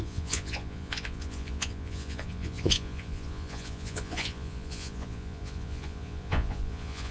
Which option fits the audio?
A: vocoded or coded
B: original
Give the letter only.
A